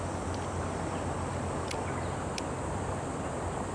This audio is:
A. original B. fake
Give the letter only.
A